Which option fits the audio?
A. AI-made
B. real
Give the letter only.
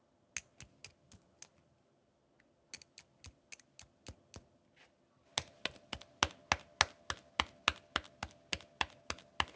B